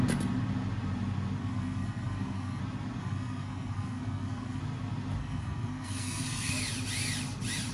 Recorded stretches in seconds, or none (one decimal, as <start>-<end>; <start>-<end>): 0.0-1.4; 2.6-3.0; 4.6-5.2; 6.5-7.7